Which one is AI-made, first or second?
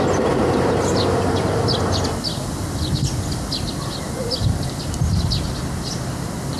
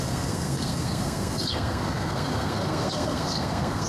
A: second